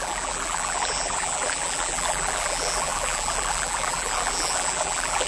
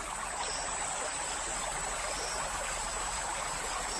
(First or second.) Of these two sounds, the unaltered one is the second